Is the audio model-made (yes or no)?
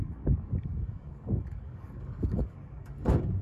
yes